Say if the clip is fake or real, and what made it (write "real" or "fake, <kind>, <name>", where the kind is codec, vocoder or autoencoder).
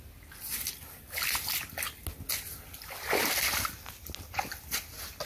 real